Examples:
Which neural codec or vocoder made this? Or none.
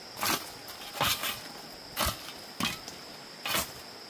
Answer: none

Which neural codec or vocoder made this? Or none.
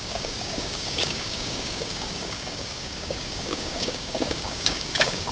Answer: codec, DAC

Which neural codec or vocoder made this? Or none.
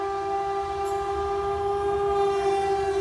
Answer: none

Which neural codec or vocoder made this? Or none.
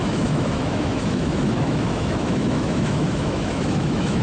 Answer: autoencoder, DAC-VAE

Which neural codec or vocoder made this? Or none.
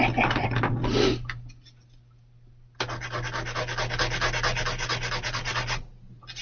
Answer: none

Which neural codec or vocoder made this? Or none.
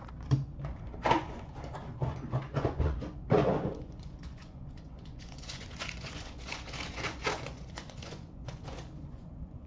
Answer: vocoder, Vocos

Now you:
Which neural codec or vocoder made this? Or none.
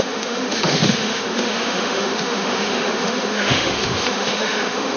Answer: autoencoder, DAC-VAE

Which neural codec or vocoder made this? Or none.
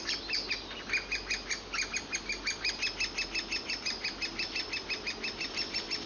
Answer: none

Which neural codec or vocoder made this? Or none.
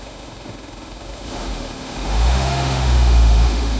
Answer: autoencoder, DAC-VAE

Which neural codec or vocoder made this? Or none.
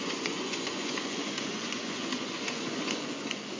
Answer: vocoder, Vocos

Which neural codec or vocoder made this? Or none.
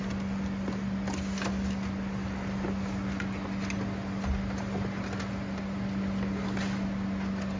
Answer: none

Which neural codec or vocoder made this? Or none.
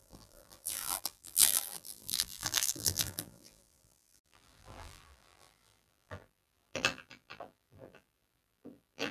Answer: vocoder, BigVGAN v2